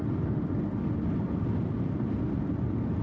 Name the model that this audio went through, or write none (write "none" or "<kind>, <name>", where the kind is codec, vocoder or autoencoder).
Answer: none